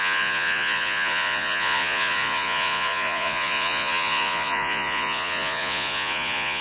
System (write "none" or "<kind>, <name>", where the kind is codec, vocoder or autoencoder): vocoder, Vocos